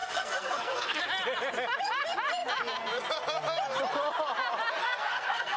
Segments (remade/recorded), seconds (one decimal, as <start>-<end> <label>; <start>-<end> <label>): 0.0-1.0 remade; 1.0-4.8 recorded; 4.8-5.6 remade